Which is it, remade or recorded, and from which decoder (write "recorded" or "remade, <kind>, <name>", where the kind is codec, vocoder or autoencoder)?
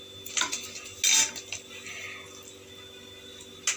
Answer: recorded